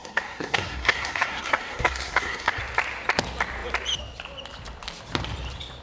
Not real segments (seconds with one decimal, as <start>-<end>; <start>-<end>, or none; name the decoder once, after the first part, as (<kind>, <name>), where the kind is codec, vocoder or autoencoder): 0.0-2.6 (codec, SNAC)